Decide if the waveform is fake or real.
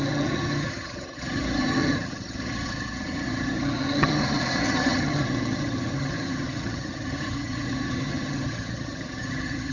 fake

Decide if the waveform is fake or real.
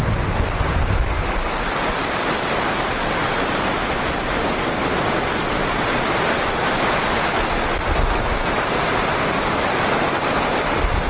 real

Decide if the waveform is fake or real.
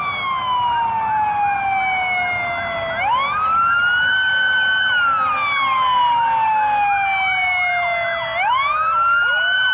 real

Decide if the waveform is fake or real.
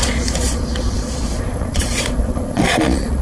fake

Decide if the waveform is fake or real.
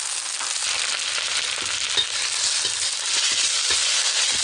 real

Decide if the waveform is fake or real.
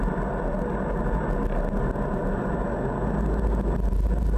real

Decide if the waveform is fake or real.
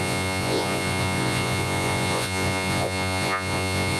fake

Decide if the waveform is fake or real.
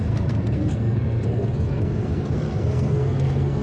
fake